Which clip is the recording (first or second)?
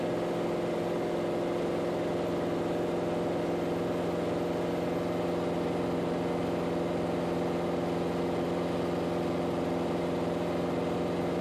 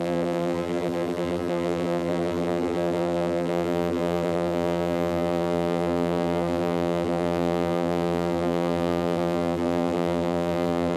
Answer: first